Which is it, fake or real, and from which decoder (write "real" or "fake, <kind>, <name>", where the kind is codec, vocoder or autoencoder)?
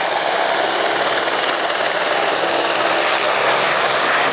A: real